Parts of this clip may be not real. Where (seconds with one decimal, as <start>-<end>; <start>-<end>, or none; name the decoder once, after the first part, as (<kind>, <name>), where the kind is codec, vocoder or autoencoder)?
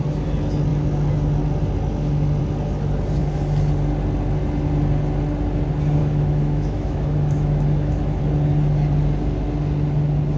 6.0-8.2 (autoencoder, DAC-VAE)